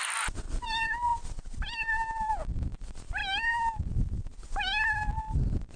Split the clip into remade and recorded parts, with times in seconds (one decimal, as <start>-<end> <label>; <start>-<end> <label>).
0.0-1.1 remade; 1.1-2.3 recorded; 2.3-3.2 remade; 3.2-5.8 recorded